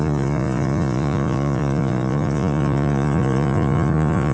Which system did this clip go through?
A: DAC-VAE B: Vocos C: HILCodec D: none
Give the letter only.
B